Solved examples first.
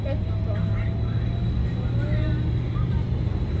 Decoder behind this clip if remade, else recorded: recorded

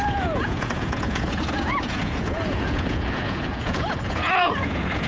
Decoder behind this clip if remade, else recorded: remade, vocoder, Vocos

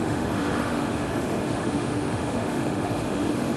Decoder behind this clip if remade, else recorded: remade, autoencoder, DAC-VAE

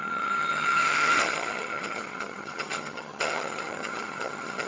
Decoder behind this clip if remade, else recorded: remade, vocoder, HiFi-GAN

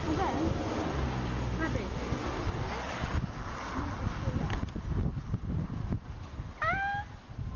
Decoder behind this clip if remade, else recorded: recorded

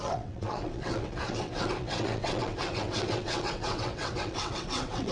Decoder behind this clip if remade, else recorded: remade, vocoder, WaveNeXt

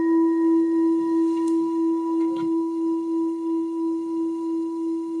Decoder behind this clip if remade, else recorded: remade, codec, SNAC